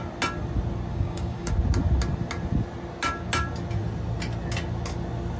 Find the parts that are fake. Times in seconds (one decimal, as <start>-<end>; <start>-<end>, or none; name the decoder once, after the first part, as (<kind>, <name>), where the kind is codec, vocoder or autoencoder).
0.9-1.5 (codec, DAC)